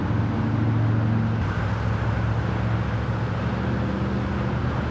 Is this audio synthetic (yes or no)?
no